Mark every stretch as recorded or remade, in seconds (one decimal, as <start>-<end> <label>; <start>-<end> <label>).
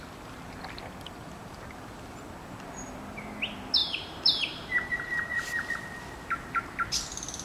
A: 0.0-3.8 recorded; 3.8-5.7 remade; 5.7-7.4 recorded